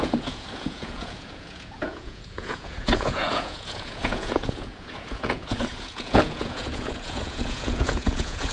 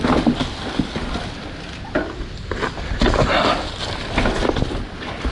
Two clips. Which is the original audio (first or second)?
second